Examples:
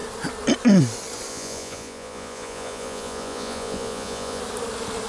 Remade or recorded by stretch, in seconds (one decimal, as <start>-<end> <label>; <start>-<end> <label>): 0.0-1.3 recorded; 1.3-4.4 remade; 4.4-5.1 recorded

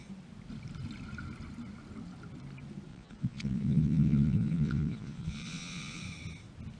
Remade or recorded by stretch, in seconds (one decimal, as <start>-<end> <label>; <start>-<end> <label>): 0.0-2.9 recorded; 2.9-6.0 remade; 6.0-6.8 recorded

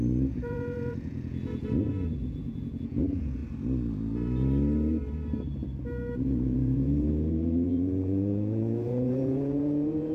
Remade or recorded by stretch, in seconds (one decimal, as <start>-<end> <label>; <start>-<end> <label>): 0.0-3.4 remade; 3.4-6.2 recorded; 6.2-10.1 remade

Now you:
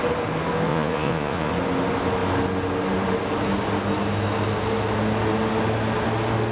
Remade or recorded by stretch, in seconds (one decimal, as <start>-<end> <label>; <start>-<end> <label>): 0.0-0.7 recorded; 0.7-1.5 remade; 1.5-6.5 recorded

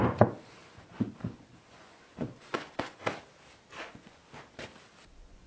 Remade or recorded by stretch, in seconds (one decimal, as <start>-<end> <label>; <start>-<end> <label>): 0.0-3.0 remade; 3.0-3.8 recorded; 3.8-4.2 remade; 4.2-5.1 recorded; 5.1-5.5 remade